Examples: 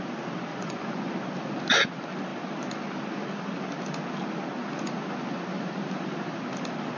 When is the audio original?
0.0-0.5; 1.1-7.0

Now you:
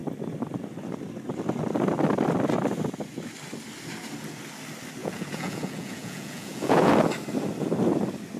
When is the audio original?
0.0-5.0; 6.9-8.4

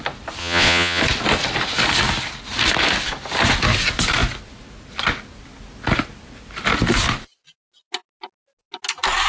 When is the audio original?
0.0-0.4; 1.0-9.3

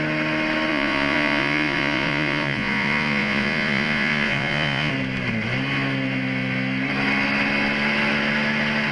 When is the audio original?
0.0-0.7; 4.9-8.9